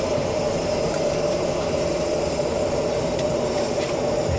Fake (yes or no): no